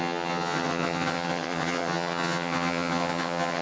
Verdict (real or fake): fake